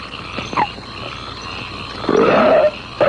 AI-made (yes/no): no